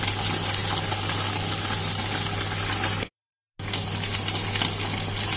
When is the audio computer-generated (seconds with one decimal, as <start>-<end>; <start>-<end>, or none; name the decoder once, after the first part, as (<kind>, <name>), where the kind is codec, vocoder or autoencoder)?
none